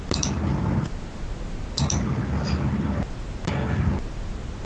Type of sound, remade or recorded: recorded